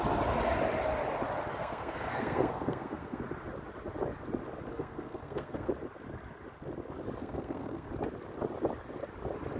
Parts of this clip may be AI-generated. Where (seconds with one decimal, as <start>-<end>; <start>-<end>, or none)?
1.6-3.2; 4.7-5.7; 7.2-7.9